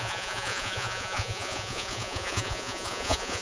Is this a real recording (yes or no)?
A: no